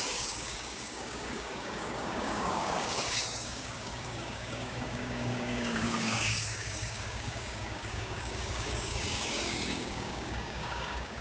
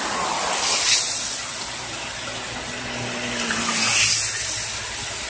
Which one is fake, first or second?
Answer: first